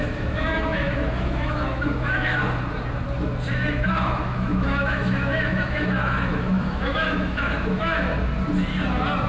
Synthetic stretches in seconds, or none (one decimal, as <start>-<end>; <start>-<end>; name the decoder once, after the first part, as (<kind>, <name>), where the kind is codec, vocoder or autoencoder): 0.0-2.4 (autoencoder, DAC-VAE); 3.5-8.1